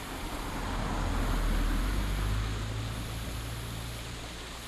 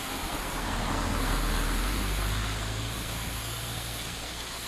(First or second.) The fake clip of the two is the second